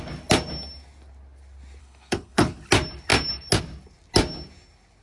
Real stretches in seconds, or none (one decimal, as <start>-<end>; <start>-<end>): 0.0-1.8; 2.7-5.0